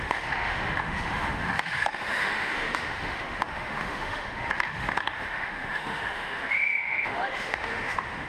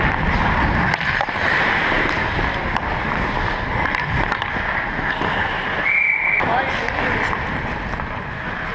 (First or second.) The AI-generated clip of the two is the first